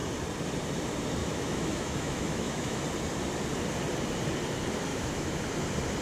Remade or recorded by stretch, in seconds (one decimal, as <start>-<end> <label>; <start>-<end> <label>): 0.0-1.2 recorded; 1.2-2.8 remade; 2.8-4.9 recorded; 4.9-5.4 remade; 5.4-6.0 recorded